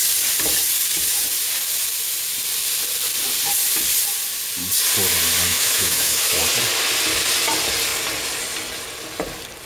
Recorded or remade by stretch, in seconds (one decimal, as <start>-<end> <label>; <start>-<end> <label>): 0.0-5.5 recorded; 5.5-6.4 remade; 6.4-9.7 recorded